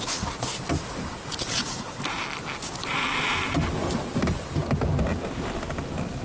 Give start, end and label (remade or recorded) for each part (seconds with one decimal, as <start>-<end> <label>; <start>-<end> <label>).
0.0-2.8 recorded; 2.8-3.9 remade; 3.9-6.2 recorded